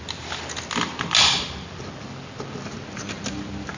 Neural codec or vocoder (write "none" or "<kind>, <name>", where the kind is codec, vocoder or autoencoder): none